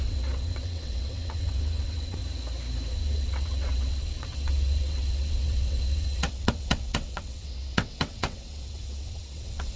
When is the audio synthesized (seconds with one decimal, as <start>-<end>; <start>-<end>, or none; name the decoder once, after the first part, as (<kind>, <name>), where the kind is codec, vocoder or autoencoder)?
0.0-2.2 (vocoder, WaveNeXt); 2.9-9.8